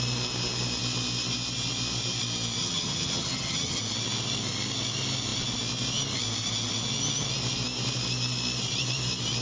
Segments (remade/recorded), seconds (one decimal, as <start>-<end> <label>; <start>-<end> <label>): 0.0-2.6 recorded; 2.6-3.8 remade; 3.8-9.4 recorded